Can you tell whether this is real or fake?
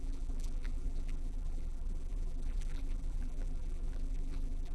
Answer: fake